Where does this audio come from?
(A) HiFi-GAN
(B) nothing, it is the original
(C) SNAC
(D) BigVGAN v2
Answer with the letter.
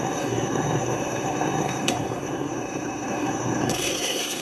C